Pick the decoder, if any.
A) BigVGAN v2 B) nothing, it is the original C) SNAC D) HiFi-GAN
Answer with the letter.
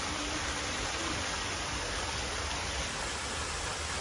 B